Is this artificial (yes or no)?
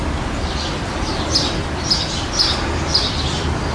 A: no